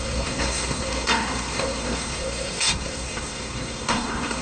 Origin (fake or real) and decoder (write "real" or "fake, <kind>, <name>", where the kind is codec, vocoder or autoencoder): fake, codec, SNAC